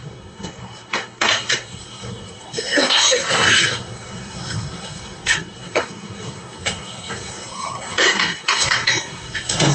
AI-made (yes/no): yes